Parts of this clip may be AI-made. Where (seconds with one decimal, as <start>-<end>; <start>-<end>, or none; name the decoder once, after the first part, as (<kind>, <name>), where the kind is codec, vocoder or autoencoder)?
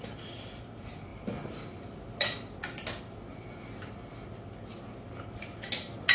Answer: none